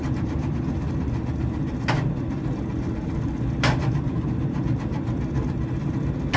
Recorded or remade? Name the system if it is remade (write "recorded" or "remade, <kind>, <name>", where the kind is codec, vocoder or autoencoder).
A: recorded